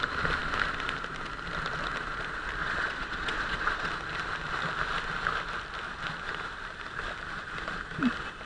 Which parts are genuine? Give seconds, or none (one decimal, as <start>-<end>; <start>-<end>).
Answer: 0.0-2.6; 3.9-8.5